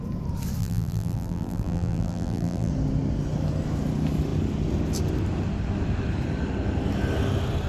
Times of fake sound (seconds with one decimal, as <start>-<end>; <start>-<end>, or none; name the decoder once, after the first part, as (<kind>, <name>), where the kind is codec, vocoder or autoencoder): 0.6-2.7 (vocoder, BigVGAN v2)